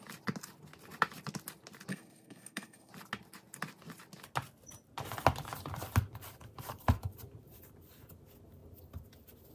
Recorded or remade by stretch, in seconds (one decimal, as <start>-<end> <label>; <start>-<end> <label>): 0.0-1.9 recorded; 1.9-2.9 remade; 2.9-9.5 recorded